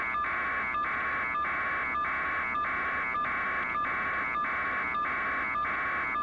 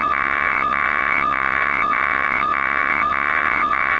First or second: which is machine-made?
second